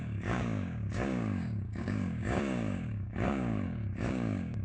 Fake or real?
fake